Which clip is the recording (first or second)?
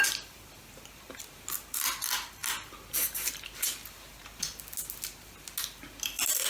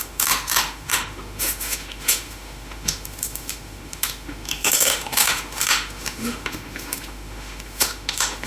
first